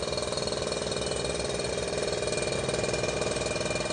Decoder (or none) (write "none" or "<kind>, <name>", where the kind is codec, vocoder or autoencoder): none